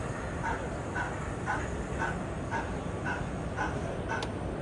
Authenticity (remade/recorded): recorded